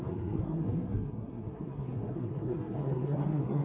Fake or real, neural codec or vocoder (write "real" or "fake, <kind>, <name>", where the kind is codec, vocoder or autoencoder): fake, codec, SNAC